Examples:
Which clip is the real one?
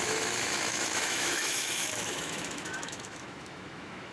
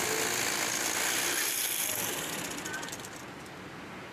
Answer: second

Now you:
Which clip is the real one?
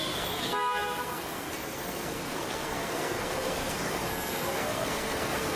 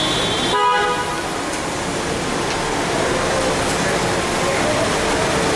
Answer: second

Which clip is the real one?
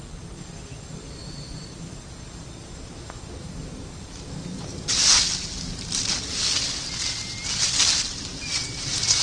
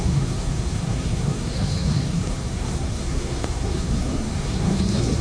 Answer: first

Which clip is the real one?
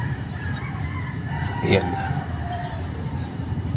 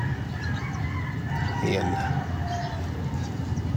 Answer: second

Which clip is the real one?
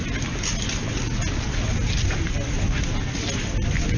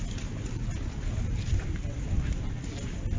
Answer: first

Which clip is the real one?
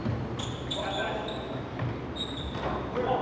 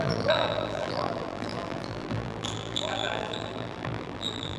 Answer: first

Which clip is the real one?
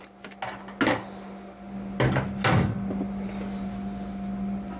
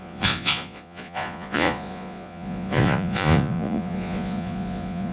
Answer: first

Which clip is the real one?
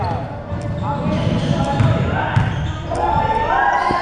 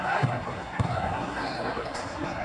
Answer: first